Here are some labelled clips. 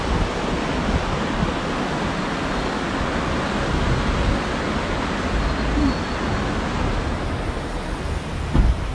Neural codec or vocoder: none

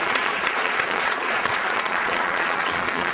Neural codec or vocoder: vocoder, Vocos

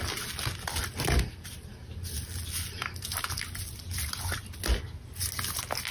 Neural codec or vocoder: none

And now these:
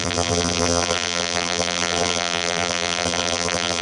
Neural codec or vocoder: vocoder, BigVGAN v2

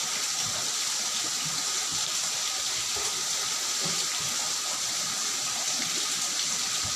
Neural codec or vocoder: none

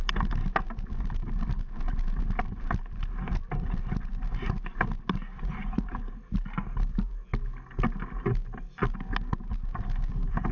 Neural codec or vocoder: none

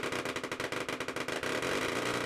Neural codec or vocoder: none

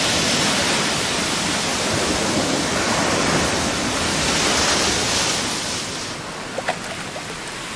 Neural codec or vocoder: vocoder, BigVGAN v2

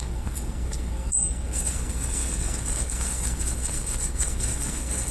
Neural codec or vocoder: codec, SNAC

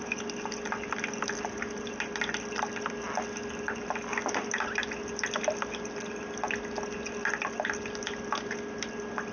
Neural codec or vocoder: none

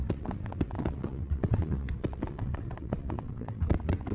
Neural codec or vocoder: vocoder, WaveNeXt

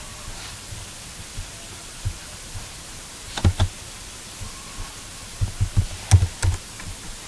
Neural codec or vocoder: none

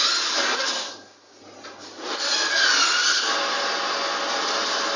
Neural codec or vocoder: none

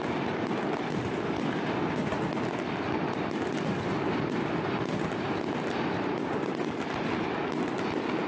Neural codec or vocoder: none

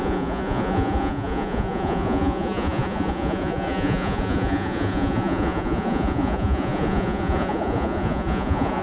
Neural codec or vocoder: vocoder, Vocos